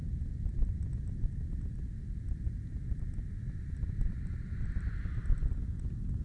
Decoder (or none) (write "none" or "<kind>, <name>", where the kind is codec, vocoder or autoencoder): none